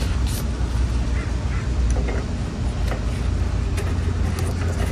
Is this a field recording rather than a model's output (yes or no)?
yes